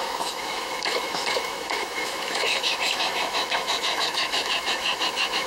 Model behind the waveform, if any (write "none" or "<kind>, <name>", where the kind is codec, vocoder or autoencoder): autoencoder, DAC-VAE